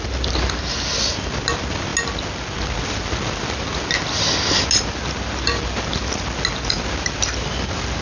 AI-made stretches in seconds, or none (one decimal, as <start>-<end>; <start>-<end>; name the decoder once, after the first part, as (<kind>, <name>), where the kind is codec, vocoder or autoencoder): none